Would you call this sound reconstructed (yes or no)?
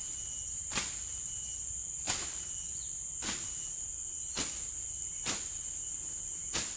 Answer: no